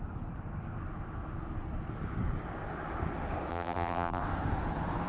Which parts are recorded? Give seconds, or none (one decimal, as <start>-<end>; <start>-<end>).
0.0-3.5; 4.2-5.1